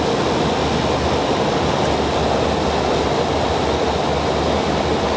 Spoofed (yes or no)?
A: no